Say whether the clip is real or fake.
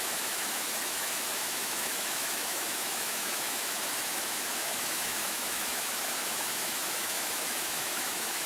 fake